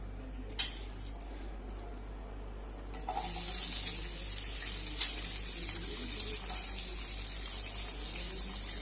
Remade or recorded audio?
recorded